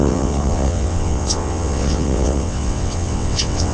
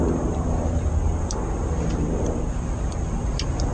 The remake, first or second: first